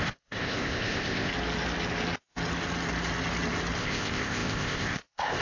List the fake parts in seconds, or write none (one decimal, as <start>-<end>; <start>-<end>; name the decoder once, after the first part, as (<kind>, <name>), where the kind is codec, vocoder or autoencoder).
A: 0.0-1.3 (codec, ZipCodec); 3.8-5.4